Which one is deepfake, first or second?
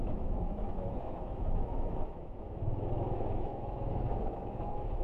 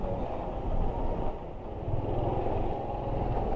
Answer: first